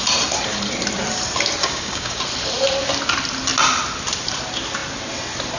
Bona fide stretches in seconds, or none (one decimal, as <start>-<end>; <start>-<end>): 0.0-1.6; 2.2-5.6